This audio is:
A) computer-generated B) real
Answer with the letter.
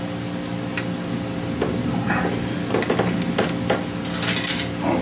B